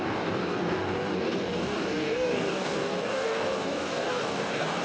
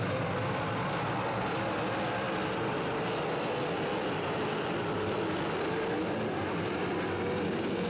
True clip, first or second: second